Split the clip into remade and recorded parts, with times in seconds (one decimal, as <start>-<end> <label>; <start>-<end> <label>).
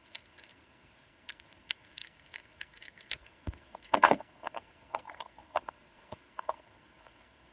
0.0-7.5 remade